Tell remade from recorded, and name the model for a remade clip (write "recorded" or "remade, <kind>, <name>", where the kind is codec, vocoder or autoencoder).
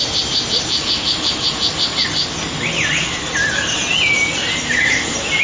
recorded